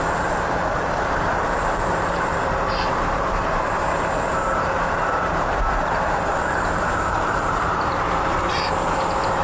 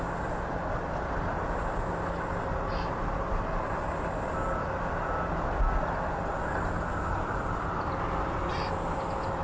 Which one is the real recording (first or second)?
second